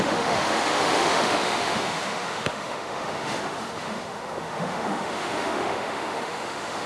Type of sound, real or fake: fake